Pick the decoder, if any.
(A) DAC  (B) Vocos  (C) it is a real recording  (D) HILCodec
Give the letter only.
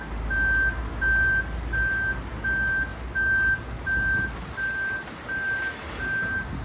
C